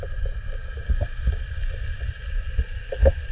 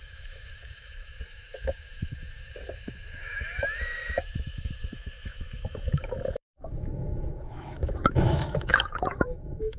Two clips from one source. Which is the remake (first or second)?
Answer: second